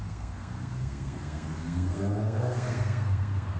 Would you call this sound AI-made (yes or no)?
yes